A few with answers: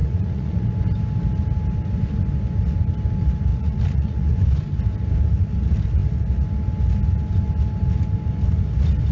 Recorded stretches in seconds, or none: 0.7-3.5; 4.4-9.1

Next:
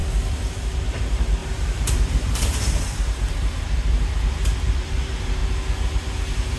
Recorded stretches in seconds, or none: 0.0-0.8; 5.4-6.1

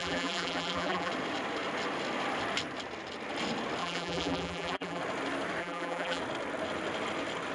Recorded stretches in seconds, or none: 1.1-3.8; 5.0-5.6; 6.2-7.5

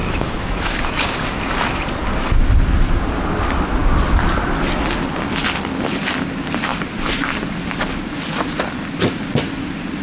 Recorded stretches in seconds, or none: 0.8-10.0